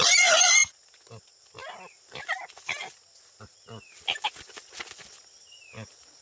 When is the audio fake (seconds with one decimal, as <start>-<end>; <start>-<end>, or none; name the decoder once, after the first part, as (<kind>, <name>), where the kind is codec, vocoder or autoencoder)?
none